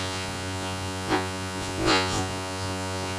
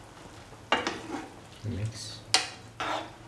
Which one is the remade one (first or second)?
first